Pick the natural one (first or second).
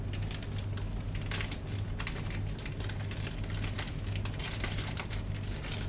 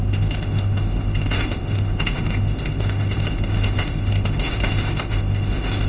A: first